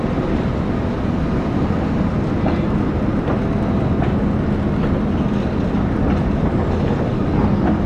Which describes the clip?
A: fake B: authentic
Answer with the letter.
B